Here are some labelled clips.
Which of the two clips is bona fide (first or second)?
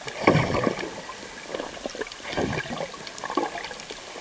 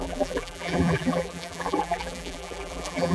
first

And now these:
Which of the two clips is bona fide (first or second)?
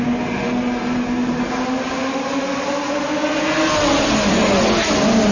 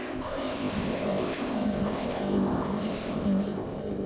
first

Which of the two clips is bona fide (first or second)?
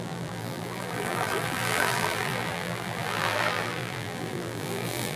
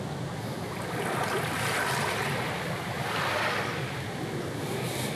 second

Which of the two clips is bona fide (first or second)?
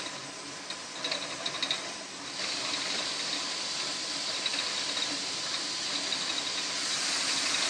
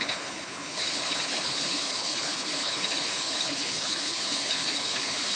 first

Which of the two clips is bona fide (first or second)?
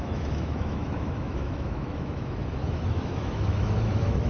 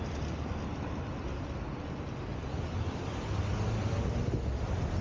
second